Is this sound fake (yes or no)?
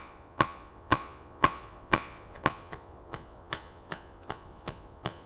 yes